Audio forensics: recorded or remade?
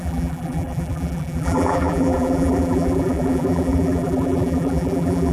remade